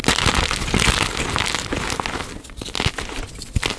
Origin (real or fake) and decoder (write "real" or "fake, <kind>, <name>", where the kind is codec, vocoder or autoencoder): real